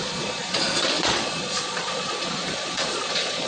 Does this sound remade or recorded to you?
remade